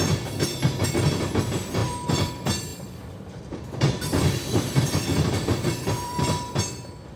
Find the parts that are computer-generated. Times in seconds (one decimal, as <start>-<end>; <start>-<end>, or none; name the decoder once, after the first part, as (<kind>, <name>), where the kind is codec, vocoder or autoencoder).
1.8-2.3 (vocoder, BigVGAN v2); 2.7-6.5